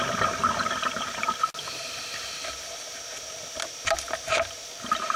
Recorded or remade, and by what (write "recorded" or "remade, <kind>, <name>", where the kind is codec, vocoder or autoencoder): recorded